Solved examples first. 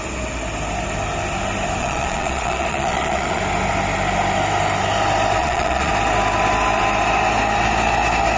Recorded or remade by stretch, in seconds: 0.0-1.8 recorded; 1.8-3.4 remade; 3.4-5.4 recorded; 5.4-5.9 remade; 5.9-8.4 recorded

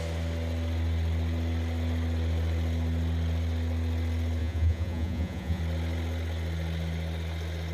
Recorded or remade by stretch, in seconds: 0.0-4.4 recorded; 4.4-5.6 remade; 5.6-7.7 recorded

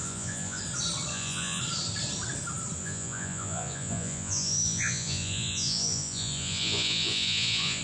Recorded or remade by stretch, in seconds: 0.0-0.6 remade; 0.6-1.1 recorded; 1.1-1.6 remade; 1.6-2.8 recorded; 2.8-7.8 remade

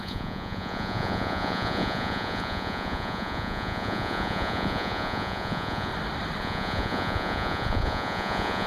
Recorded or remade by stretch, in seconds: 0.0-5.9 remade; 5.9-6.4 recorded; 6.4-8.7 remade

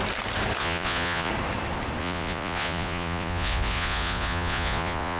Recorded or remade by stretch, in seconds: 0.0-0.6 recorded; 0.6-1.3 remade; 1.3-2.0 recorded; 2.0-5.2 remade

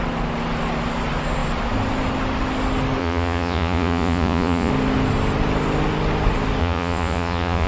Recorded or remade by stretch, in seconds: 0.0-3.0 recorded; 3.0-4.7 remade; 4.7-6.6 recorded; 6.6-7.7 remade

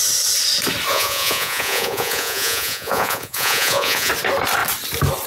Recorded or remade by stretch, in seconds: 0.0-0.9 recorded; 0.9-4.1 remade; 4.1-5.3 recorded